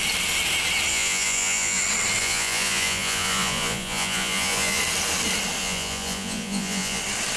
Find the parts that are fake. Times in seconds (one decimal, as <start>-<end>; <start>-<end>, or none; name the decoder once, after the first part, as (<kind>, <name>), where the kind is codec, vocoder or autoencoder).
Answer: 0.9-1.8 (vocoder, Vocos); 2.2-4.8; 5.6-7.0